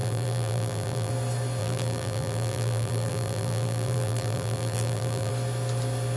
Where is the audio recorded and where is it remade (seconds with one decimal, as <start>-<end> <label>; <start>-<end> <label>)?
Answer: 0.0-1.1 remade; 1.1-1.6 recorded; 1.6-5.3 remade; 5.3-6.2 recorded

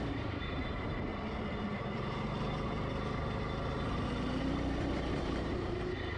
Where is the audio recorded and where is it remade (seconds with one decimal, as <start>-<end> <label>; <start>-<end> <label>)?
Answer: 0.0-1.1 remade; 1.1-4.4 recorded; 4.4-6.2 remade

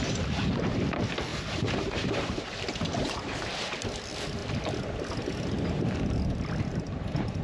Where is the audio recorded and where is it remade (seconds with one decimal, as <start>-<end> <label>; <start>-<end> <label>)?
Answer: 0.0-1.3 recorded; 1.3-2.6 remade; 2.6-6.7 recorded; 6.7-7.4 remade

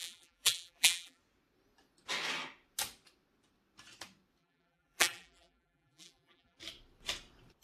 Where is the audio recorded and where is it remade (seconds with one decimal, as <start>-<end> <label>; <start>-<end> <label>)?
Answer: 0.0-1.2 remade; 1.2-4.4 recorded; 4.4-6.6 remade; 6.6-7.6 recorded